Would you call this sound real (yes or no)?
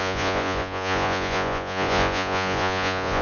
no